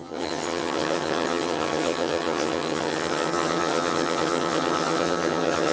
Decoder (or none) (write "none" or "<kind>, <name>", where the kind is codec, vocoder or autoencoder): vocoder, HiFi-GAN